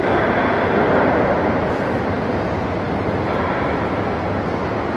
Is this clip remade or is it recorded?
recorded